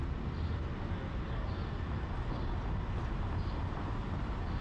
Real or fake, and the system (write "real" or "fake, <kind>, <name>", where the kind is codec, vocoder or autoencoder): real